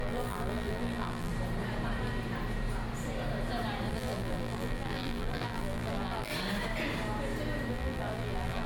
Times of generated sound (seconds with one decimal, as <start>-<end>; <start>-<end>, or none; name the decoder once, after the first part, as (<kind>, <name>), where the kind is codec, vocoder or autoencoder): 0.0-1.3 (vocoder, BigVGAN v2); 3.9-6.3; 7.7-8.7

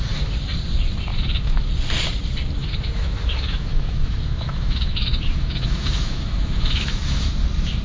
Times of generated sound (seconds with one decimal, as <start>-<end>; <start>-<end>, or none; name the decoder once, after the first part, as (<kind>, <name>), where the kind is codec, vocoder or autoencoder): 1.1-1.7 (autoencoder, DAC-VAE); 2.6-7.3

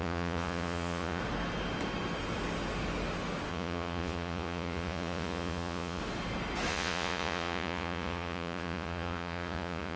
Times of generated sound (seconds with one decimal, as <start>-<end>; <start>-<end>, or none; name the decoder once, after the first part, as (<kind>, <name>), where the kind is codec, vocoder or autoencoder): 0.0-1.2 (vocoder, Vocos); 3.5-6.0; 6.7-10.0

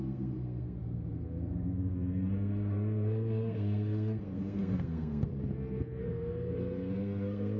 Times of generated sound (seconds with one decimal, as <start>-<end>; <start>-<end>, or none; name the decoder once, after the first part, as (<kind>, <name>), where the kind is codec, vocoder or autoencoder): 0.0-5.3 (codec, SNAC); 6.0-7.6

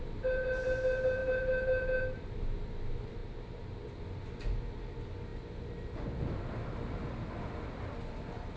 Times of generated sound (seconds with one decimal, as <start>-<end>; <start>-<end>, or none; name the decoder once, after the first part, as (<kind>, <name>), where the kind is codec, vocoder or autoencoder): 1.2-2.8 (vocoder, BigVGAN v2); 3.2-4.0

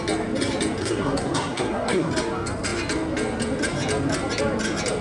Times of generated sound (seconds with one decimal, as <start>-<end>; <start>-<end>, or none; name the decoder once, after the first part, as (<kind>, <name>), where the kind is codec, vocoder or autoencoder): 0.8-2.1 (codec, SNAC)